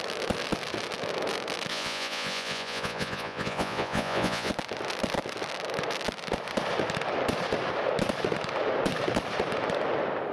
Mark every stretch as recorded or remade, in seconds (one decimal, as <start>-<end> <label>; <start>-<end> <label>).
0.0-1.7 recorded; 1.7-4.5 remade; 4.5-10.3 recorded